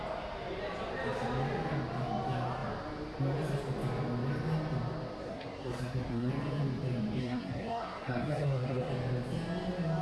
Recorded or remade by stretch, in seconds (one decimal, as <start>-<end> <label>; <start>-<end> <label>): 0.0-5.3 recorded; 5.3-6.3 remade; 6.3-7.2 recorded; 7.2-8.9 remade; 8.9-10.0 recorded

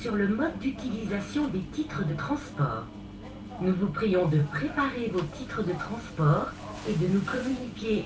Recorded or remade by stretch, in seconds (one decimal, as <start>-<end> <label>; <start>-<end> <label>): 0.0-7.3 recorded; 7.3-8.1 remade